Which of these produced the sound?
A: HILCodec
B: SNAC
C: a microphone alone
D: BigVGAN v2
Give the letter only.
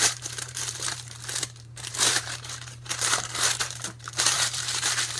D